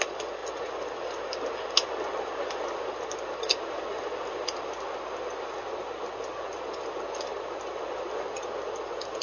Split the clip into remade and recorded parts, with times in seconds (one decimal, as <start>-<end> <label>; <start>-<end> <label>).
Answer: 0.0-9.2 recorded